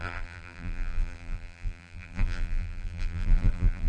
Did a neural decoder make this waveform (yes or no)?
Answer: yes